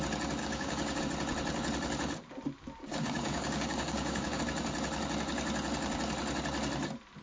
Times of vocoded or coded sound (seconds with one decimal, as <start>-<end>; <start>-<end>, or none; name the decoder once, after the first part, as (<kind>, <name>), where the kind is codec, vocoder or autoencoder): 0.4-1.0 (codec, DAC); 2.8-4.4

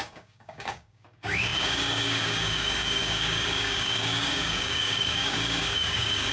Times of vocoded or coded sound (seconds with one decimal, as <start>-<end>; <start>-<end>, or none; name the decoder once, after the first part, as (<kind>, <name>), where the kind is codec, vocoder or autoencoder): 0.0-6.3 (codec, DAC)

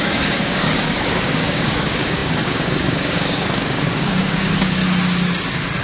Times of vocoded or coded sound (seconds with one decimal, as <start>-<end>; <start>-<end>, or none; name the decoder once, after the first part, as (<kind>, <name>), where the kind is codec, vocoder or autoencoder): 0.0-4.8 (codec, DAC)